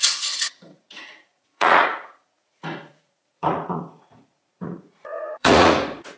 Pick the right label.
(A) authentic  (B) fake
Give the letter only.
B